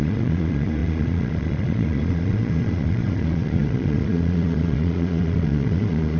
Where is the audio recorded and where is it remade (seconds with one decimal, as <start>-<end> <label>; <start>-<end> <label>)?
0.0-6.2 remade